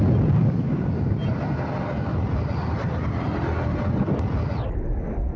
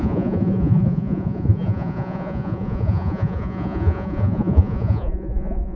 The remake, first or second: second